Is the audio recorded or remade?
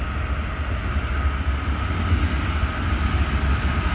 recorded